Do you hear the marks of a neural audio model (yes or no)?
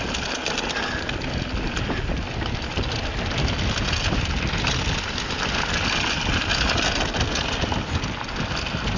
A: no